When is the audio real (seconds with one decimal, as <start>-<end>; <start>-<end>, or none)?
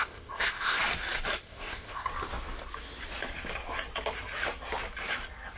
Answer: 0.8-1.4; 2.1-5.6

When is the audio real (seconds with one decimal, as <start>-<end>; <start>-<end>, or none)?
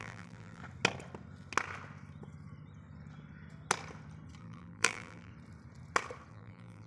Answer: 0.6-4.4; 5.3-6.3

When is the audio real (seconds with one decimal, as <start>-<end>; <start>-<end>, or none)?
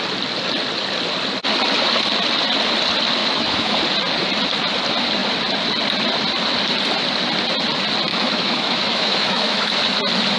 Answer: 0.0-3.2; 3.8-8.1; 9.7-10.4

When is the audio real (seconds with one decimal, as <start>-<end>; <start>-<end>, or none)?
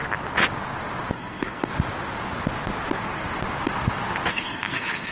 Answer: 0.0-1.1; 1.7-4.3